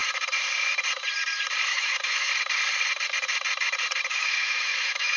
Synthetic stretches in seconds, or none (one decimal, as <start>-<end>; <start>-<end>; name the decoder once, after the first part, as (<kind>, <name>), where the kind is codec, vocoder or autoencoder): 1.7-2.3 (autoencoder, DAC-VAE); 4.1-5.2